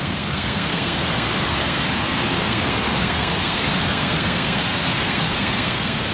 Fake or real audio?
fake